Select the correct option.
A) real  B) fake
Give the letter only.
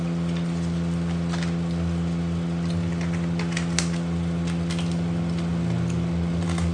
A